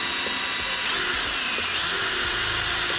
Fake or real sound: real